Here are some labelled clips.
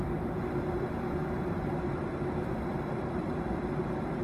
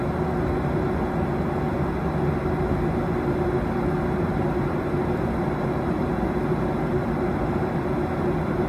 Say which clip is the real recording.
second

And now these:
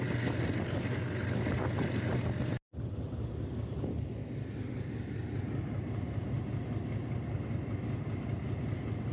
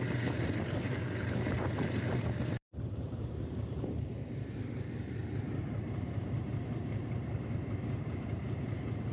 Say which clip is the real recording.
first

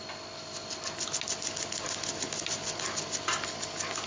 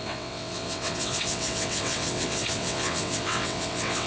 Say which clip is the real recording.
first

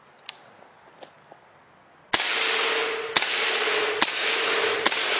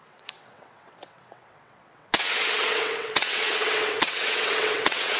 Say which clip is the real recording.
first